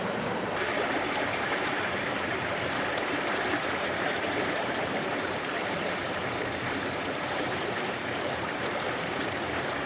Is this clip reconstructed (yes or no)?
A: yes